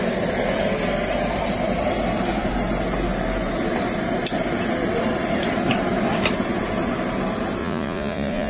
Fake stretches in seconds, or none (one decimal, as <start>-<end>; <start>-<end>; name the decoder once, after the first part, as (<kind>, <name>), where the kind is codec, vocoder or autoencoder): 7.6-8.5 (vocoder, Vocos)